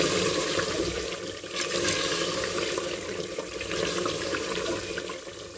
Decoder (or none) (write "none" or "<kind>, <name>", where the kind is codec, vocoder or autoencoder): vocoder, BigVGAN v2